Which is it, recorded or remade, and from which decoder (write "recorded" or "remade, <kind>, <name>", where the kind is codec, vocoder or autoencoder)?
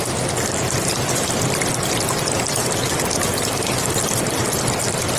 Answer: recorded